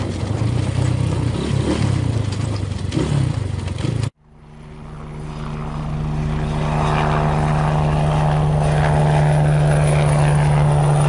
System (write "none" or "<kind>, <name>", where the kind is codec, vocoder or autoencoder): none